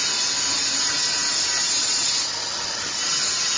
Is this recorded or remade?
recorded